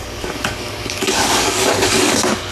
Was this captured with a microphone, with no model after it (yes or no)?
no